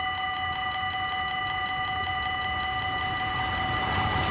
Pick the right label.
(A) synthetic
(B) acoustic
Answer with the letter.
B